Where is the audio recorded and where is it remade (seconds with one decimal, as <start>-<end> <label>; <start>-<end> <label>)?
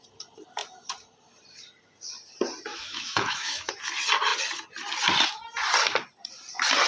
0.0-2.7 recorded; 2.7-3.7 remade; 3.7-6.9 recorded